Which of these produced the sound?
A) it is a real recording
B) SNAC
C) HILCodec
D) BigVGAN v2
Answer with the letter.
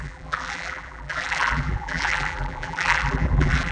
D